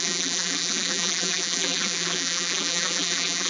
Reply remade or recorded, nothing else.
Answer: remade